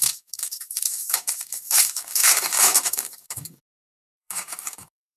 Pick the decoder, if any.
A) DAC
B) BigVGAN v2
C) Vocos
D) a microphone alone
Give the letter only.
A